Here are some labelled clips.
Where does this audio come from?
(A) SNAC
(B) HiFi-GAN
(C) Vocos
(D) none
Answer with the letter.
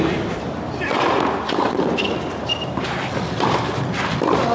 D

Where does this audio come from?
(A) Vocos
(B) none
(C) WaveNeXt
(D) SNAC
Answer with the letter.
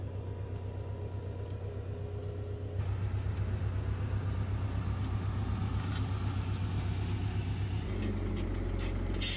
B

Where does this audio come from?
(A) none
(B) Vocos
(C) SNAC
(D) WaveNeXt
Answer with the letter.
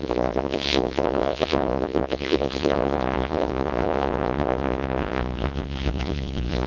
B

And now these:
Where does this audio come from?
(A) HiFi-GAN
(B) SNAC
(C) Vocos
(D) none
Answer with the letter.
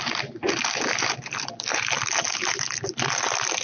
D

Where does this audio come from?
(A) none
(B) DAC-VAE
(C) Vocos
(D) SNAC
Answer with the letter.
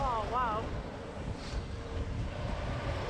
A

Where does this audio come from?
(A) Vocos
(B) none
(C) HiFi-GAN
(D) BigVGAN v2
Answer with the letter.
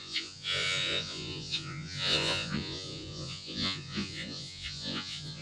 A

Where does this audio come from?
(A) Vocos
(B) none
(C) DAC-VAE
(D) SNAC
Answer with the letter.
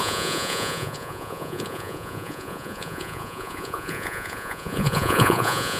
A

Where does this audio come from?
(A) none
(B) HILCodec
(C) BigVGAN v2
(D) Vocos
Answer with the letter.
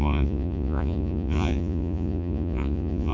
D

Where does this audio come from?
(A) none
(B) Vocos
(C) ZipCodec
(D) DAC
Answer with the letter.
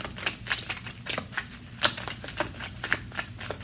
A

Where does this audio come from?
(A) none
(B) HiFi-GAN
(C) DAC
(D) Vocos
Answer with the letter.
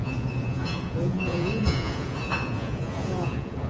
D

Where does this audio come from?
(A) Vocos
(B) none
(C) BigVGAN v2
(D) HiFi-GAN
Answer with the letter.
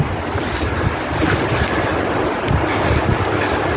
B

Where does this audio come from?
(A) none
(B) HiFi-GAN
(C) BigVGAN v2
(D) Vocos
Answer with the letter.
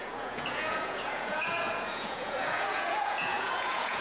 D